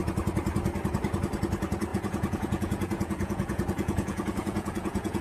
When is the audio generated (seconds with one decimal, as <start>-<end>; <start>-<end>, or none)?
1.9-5.2